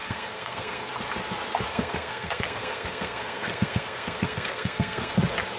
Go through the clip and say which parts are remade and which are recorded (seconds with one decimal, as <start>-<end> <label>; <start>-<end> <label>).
0.0-0.9 remade; 0.9-1.7 recorded; 1.7-5.1 remade; 5.1-5.6 recorded